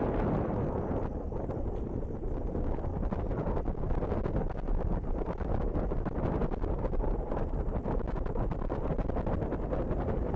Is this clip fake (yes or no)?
no